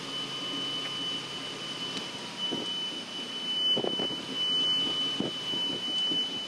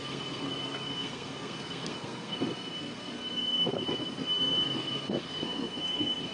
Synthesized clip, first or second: second